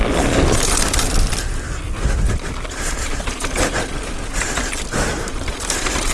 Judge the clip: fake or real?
real